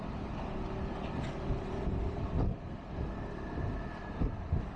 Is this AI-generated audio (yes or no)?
no